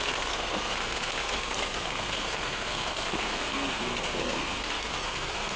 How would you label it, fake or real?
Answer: fake